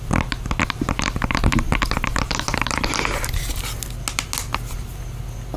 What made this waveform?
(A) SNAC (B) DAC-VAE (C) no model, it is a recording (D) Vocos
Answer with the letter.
C